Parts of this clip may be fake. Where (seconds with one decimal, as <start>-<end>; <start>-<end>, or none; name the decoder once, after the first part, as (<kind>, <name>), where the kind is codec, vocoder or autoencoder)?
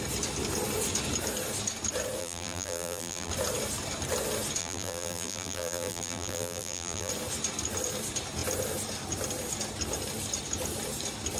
2.2-3.3 (vocoder, BigVGAN v2); 4.6-7.1